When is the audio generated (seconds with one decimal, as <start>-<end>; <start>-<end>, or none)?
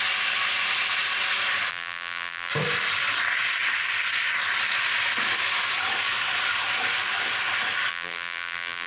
1.7-2.5; 7.9-8.9